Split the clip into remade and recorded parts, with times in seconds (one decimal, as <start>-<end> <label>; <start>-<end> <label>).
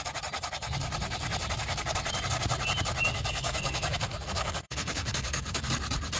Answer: 0.0-3.1 recorded; 3.1-5.7 remade; 5.7-6.2 recorded